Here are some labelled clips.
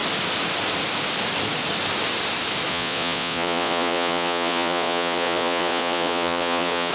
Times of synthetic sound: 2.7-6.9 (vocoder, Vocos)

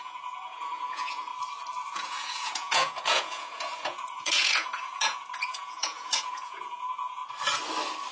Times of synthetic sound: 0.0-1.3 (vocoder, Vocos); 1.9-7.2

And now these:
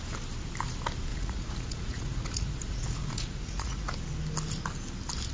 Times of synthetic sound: 1.1-3.9 (vocoder, Vocos)